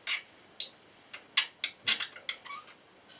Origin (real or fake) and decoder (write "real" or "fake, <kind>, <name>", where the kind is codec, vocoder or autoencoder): real